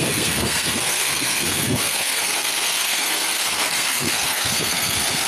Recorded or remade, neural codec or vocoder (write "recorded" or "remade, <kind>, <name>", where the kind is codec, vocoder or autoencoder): remade, codec, SNAC